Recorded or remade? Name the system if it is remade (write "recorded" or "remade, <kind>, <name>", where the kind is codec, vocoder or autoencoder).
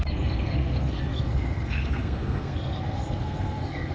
remade, codec, SNAC